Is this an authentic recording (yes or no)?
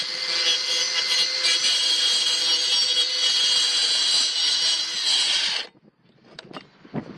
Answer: yes